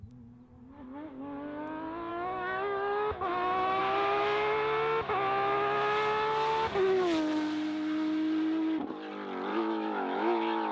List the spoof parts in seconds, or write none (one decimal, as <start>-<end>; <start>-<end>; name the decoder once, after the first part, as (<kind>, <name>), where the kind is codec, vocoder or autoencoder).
2.1-3.8 (autoencoder, DAC-VAE); 9.5-10.7